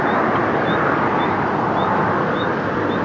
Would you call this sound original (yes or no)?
yes